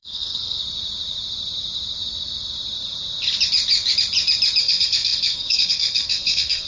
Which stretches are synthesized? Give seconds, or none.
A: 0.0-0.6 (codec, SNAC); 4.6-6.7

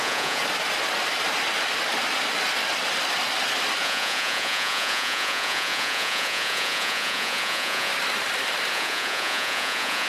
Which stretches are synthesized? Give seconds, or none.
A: 0.0-0.4 (vocoder, Vocos); 3.8-7.9; 8.7-10.1